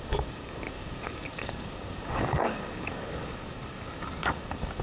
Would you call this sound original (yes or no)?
no